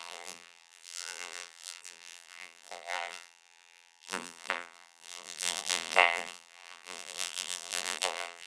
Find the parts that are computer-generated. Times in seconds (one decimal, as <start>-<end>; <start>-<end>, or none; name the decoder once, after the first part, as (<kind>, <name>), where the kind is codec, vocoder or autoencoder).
0.0-8.5 (vocoder, BigVGAN v2)